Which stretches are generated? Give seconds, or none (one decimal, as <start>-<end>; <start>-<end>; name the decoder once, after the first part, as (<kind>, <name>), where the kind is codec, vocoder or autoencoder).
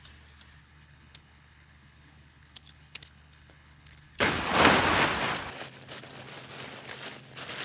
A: 0.6-4.4 (codec, HILCodec)